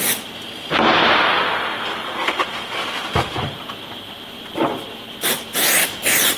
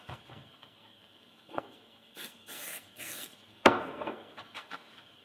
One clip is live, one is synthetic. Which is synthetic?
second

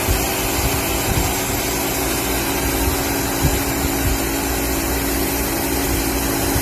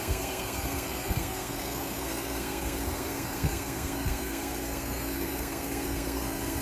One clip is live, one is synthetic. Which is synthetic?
second